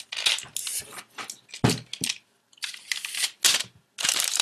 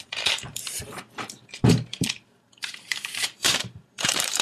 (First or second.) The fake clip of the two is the second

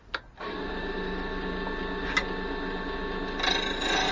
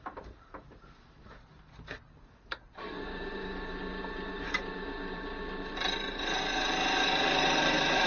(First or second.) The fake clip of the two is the second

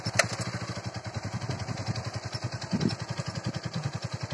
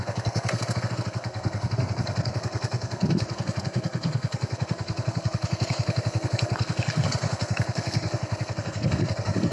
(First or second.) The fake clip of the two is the second